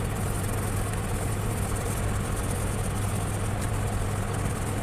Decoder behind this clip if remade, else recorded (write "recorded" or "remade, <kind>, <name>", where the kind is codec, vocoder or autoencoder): recorded